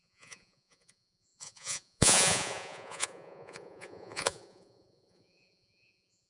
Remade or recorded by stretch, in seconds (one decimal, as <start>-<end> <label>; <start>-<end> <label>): 0.0-6.3 remade